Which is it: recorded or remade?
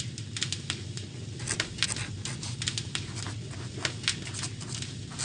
recorded